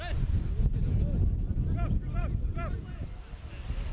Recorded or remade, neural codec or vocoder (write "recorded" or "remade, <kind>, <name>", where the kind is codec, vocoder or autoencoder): recorded